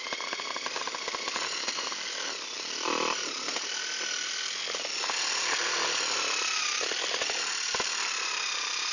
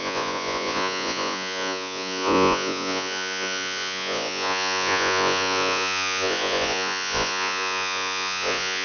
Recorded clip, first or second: first